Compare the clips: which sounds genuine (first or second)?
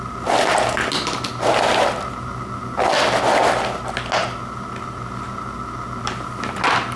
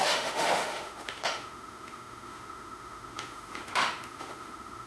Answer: first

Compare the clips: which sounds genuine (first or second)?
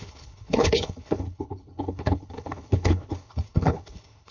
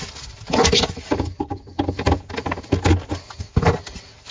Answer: second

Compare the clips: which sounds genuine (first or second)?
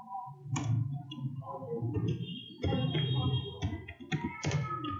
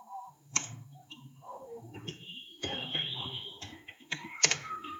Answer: first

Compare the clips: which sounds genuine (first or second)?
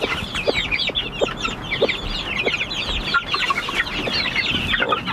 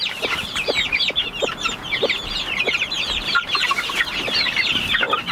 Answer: first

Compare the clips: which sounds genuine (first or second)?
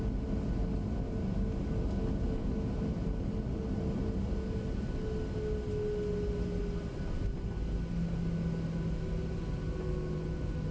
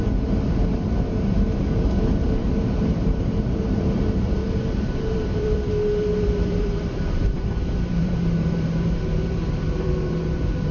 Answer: first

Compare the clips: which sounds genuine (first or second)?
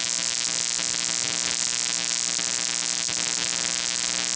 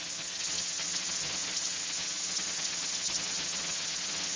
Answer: first